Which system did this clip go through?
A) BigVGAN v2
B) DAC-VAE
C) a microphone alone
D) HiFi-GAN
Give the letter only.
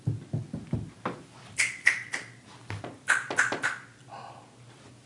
C